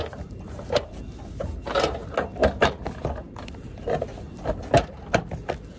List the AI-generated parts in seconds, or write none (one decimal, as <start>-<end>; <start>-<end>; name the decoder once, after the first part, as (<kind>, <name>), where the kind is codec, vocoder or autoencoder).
0.0-0.9 (vocoder, BigVGAN v2)